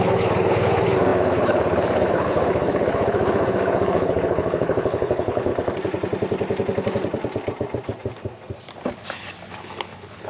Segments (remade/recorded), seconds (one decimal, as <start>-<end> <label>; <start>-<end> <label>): 0.0-5.5 remade; 5.5-9.6 recorded; 9.6-10.3 remade

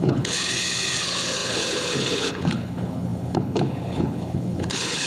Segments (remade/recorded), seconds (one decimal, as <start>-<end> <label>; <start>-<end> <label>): 0.0-5.1 remade

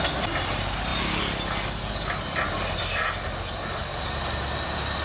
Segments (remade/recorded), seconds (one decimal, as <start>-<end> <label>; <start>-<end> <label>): 0.0-5.0 recorded